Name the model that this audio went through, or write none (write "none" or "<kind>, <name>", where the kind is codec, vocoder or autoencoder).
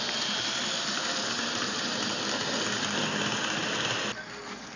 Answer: none